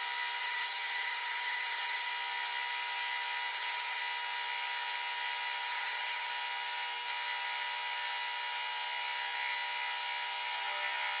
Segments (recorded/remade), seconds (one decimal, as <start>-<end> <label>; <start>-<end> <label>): 0.0-0.4 recorded; 0.4-2.1 remade; 2.1-3.5 recorded; 3.5-4.0 remade; 4.0-5.7 recorded; 5.7-6.3 remade; 6.3-11.2 recorded